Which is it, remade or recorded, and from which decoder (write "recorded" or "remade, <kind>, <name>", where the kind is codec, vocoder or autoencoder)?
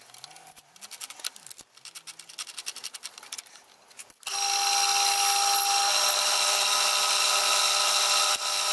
recorded